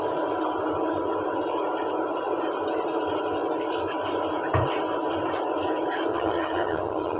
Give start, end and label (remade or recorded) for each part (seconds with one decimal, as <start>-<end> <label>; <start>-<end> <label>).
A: 0.0-6.1 recorded; 6.1-7.2 remade